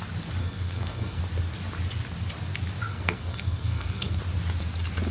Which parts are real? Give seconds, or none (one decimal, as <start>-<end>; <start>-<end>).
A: 0.0-0.4; 1.2-2.9; 4.2-5.1